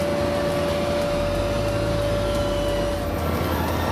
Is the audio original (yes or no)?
yes